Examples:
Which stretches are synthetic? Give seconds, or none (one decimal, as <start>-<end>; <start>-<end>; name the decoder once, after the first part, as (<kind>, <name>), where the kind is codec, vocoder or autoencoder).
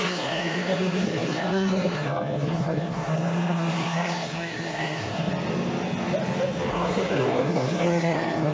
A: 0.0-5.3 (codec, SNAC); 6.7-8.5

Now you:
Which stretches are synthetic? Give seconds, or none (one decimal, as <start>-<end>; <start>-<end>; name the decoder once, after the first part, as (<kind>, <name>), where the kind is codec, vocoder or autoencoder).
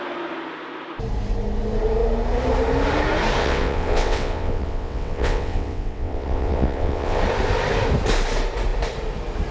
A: 3.4-7.2 (vocoder, WaveNeXt)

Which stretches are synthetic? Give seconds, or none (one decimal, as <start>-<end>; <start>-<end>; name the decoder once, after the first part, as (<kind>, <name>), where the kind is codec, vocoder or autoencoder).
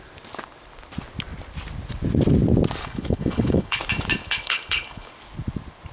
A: 2.8-3.8 (codec, HILCodec); 4.2-5.1